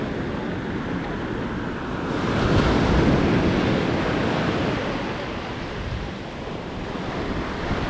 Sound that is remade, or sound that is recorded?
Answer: recorded